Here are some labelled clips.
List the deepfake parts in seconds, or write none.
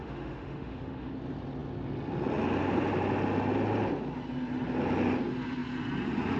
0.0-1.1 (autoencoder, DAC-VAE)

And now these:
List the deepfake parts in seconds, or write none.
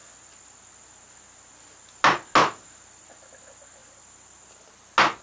none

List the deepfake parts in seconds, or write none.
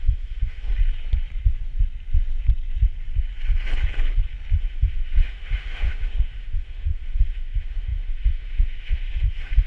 0.0-0.7 (autoencoder, DAC-VAE); 4.6-9.7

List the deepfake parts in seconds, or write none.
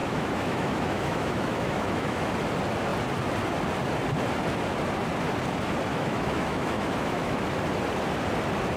0.0-2.3 (autoencoder, DAC-VAE); 5.9-7.4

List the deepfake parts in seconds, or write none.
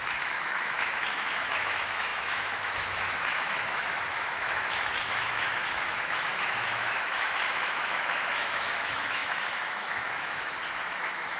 0.0-11.4 (autoencoder, DAC-VAE)